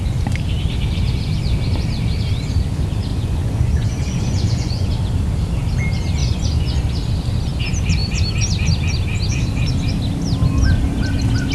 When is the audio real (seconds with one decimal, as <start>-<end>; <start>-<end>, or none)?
0.0-3.1; 4.9-6.2; 6.8-11.5